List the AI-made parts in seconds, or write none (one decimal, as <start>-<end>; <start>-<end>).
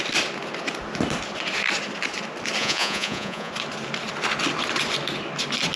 2.6-3.5